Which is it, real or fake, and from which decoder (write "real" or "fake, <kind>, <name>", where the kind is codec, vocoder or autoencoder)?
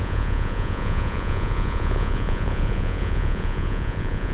fake, vocoder, Vocos